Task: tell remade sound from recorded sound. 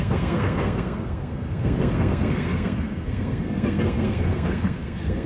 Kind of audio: remade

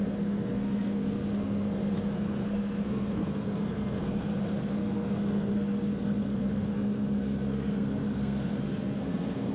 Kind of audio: remade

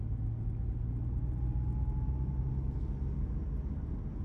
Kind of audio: recorded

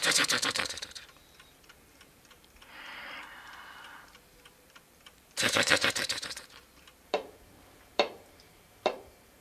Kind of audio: remade